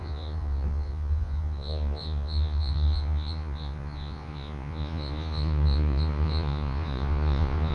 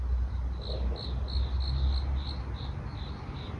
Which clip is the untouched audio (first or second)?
second